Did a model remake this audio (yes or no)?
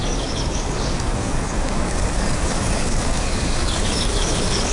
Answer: yes